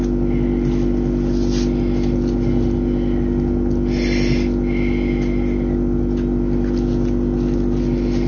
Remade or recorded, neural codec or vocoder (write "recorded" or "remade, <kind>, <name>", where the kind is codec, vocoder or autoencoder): recorded